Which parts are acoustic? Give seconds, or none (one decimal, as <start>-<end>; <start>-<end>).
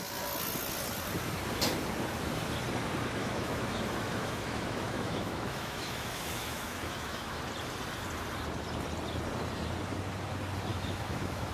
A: 0.0-3.2; 7.4-10.7